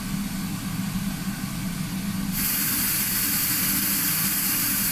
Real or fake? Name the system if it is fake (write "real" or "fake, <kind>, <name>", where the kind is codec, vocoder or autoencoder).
real